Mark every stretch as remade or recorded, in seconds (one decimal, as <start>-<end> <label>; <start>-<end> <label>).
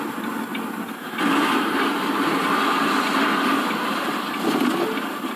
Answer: 0.0-0.5 recorded; 0.5-2.6 remade; 2.6-5.4 recorded